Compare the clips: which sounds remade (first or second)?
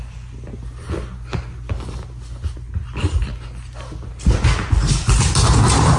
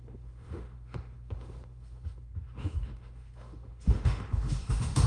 second